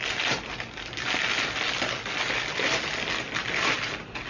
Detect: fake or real real